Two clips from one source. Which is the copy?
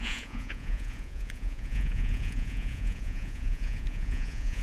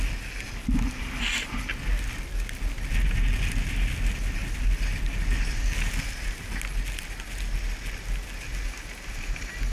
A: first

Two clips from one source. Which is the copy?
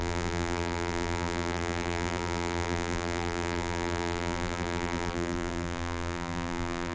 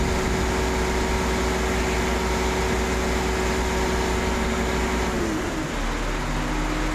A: first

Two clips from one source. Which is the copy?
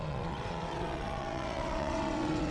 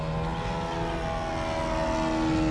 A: first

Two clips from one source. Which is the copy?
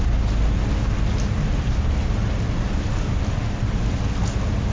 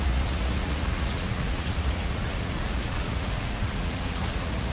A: second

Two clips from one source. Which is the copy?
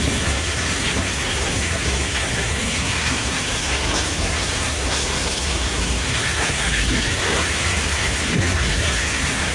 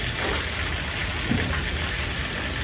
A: first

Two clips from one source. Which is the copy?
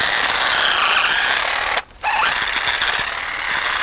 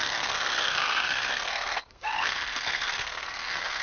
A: second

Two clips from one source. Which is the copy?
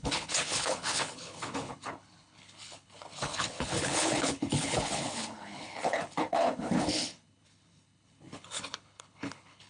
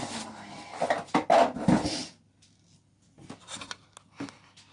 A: first